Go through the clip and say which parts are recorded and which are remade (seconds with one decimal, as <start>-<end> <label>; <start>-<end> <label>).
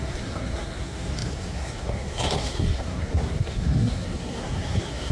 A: 0.0-5.1 remade